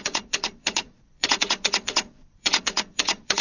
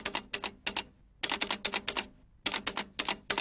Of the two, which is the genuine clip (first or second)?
second